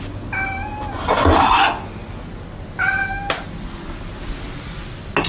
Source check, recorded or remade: recorded